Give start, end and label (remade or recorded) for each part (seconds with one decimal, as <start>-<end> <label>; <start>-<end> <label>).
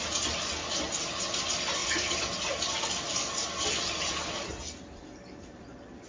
0.0-6.1 recorded